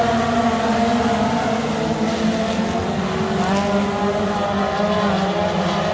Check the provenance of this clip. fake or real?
real